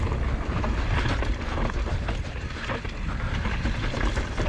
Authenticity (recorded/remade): remade